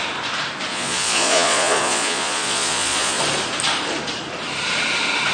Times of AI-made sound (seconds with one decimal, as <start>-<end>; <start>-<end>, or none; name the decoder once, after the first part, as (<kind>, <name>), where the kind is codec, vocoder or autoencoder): 0.7-3.2 (vocoder, Vocos)

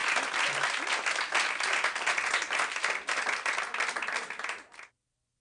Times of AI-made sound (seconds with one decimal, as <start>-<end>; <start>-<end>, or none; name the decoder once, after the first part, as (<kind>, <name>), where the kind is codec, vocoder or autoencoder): none